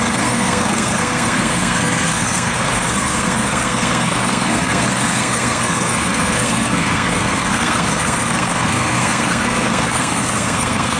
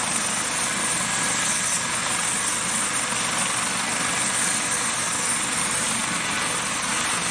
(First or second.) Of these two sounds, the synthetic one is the first